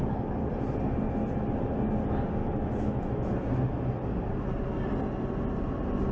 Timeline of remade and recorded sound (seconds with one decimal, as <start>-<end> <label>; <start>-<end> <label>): 0.0-2.4 recorded; 2.4-3.3 remade; 3.3-6.1 recorded